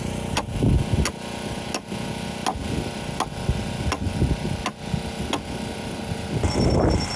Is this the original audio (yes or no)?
yes